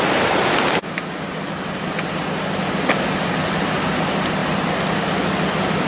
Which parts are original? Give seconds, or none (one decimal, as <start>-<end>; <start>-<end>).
0.0-5.9